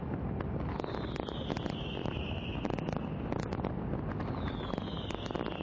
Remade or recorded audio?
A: recorded